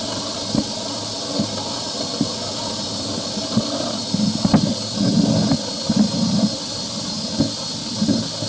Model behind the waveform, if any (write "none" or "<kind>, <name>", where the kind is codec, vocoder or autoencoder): none